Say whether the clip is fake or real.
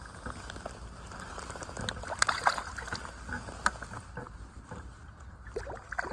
real